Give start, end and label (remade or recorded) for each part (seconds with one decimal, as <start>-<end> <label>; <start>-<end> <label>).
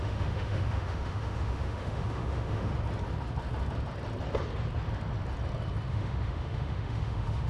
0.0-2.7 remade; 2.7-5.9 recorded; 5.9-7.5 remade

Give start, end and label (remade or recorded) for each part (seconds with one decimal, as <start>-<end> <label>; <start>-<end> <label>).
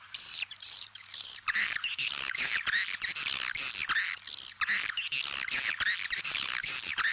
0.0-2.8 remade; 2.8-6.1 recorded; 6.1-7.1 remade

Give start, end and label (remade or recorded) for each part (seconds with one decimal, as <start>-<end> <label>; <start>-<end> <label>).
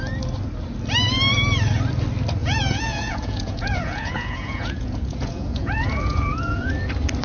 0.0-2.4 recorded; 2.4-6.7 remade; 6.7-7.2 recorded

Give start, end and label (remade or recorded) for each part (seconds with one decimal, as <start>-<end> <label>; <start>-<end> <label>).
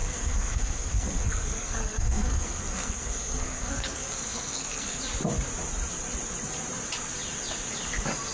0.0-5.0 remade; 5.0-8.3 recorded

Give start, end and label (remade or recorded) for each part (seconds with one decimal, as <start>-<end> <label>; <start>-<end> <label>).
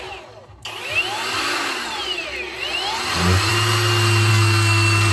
0.0-4.3 recorded; 4.3-5.1 remade